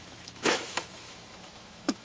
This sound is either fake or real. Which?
fake